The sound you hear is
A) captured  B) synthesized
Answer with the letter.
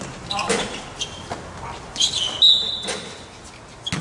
A